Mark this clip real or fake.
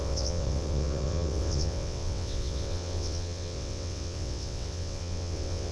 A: fake